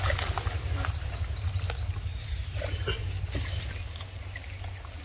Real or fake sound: real